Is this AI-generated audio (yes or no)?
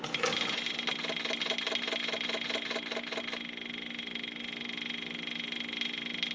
no